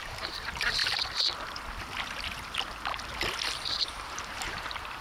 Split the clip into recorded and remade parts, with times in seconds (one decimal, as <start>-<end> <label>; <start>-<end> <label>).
0.0-0.8 remade; 0.8-3.8 recorded; 3.8-5.0 remade